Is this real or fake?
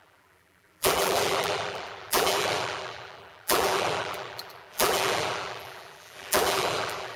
fake